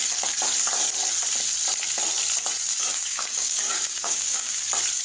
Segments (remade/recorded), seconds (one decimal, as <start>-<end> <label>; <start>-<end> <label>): 0.0-3.0 recorded; 3.0-4.6 remade; 4.6-5.0 recorded